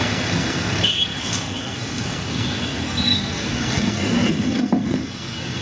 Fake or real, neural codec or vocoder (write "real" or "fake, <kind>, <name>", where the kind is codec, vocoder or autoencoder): fake, codec, SNAC